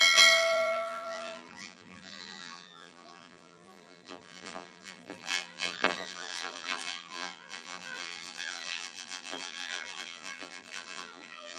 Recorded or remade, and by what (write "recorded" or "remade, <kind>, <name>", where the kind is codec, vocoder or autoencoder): remade, vocoder, BigVGAN v2